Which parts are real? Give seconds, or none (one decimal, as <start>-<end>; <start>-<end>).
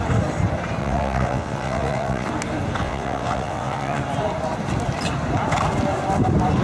0.0-0.8; 2.3-2.8; 4.0-6.6